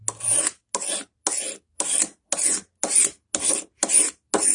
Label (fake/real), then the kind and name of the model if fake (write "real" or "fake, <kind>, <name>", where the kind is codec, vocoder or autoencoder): real